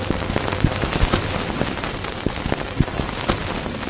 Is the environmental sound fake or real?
real